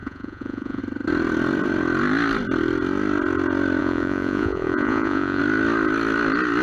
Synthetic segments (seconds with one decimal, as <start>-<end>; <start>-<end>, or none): 0.0-0.8; 3.8-5.4